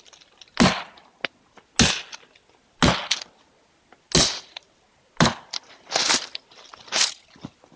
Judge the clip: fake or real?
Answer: real